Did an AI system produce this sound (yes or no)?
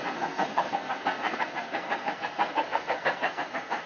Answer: yes